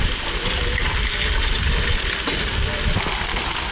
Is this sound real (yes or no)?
yes